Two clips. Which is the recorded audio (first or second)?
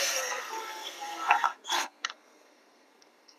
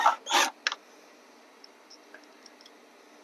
second